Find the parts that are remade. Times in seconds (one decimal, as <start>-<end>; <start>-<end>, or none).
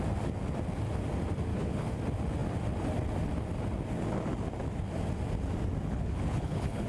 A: 1.5-2.0; 5.9-6.9